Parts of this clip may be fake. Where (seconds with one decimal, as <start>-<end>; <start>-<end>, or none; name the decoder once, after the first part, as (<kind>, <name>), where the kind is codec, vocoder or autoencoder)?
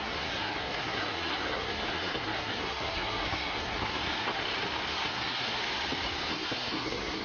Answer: 0.0-4.4 (codec, SNAC); 4.9-5.6; 6.3-7.2